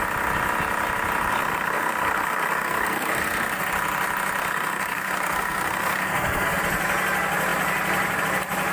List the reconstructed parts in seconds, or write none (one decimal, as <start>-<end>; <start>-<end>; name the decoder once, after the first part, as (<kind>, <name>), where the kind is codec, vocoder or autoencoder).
1.3-3.6 (codec, SNAC); 4.4-6.6